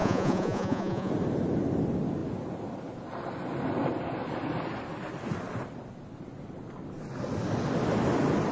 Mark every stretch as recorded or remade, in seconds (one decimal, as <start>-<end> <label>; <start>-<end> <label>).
0.0-1.1 remade; 1.1-8.5 recorded